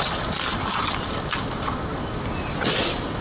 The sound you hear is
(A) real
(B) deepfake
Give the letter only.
A